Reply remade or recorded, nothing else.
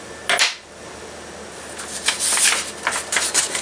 recorded